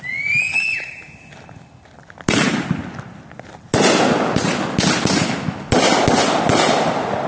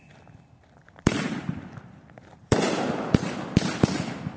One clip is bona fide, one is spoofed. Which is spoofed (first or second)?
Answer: second